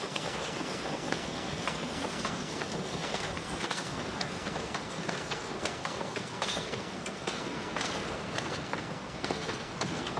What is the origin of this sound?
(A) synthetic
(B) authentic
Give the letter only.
A